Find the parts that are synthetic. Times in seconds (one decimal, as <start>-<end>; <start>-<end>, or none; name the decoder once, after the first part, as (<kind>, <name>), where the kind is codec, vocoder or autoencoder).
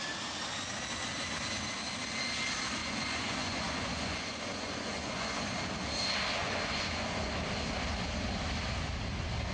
2.8-5.5 (vocoder, Vocos); 6.4-7.3